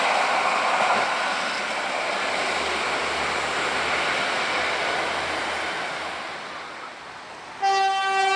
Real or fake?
real